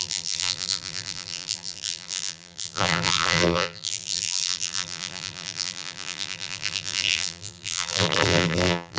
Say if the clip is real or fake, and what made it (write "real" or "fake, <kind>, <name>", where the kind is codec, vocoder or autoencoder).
fake, vocoder, BigVGAN v2